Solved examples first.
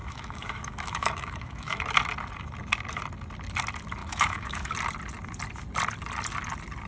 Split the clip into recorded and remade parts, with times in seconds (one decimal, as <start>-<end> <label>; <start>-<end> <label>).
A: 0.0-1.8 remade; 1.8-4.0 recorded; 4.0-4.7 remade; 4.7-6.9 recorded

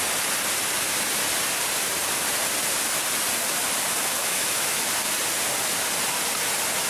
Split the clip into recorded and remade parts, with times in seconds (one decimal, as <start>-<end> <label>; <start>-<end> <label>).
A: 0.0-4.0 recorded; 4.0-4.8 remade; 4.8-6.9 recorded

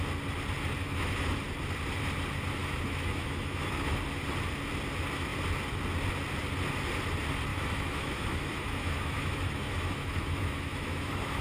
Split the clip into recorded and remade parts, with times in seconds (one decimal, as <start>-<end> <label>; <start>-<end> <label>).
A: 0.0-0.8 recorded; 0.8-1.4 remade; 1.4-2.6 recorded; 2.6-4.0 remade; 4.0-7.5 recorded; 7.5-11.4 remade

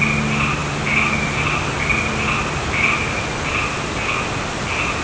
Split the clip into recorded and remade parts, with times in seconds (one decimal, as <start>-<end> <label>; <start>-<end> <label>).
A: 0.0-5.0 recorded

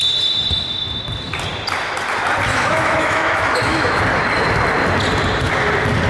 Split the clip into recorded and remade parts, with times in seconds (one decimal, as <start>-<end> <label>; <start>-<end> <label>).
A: 0.0-2.5 recorded; 2.5-4.0 remade; 4.0-6.1 recorded

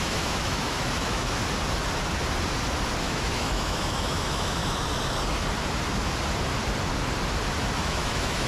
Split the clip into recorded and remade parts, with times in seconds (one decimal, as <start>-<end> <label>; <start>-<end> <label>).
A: 0.0-1.4 remade; 1.4-3.0 recorded; 3.0-4.6 remade; 4.6-7.8 recorded; 7.8-8.5 remade

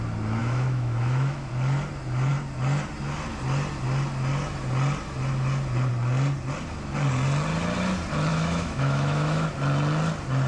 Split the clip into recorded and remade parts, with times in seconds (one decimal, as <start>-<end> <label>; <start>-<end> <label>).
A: 0.0-0.4 recorded; 0.4-1.5 remade; 1.5-8.3 recorded; 8.3-9.5 remade; 9.5-10.5 recorded